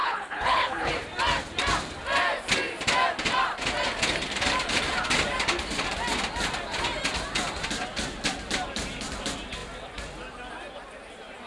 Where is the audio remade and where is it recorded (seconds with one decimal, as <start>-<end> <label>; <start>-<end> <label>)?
0.0-0.9 remade; 0.9-11.5 recorded